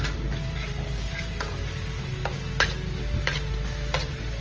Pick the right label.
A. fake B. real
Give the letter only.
B